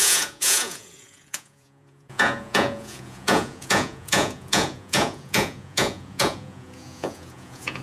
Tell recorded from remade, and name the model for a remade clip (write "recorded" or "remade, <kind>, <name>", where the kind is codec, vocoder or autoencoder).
remade, vocoder, Vocos